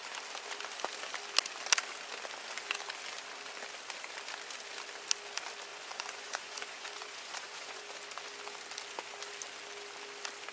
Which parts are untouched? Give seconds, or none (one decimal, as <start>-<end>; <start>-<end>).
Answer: 0.0-5.7; 7.9-10.5